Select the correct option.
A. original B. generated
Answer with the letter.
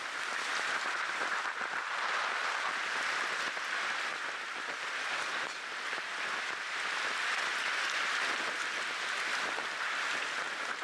A